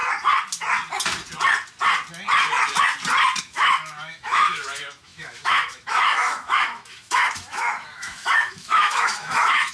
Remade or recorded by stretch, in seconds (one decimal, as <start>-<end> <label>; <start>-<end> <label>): 0.0-3.4 recorded; 3.4-9.7 remade